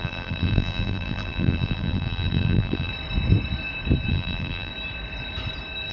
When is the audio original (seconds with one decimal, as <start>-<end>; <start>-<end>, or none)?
2.9-4.1; 4.7-5.9